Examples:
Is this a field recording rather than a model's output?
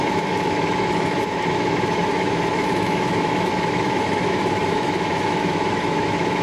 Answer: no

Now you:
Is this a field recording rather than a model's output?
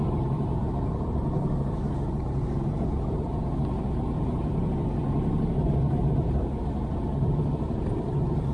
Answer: no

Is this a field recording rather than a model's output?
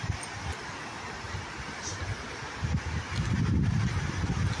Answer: yes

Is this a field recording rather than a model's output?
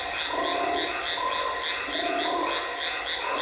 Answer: yes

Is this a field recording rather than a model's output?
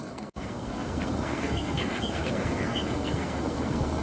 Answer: no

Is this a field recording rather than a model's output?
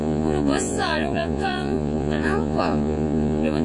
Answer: no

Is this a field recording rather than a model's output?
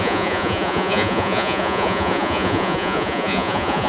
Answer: no